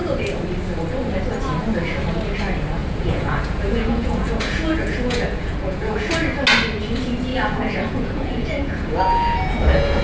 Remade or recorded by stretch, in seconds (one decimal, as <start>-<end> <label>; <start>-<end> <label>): 0.0-2.8 recorded; 2.8-6.1 remade; 6.1-7.3 recorded; 7.3-10.0 remade